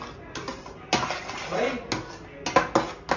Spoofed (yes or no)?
no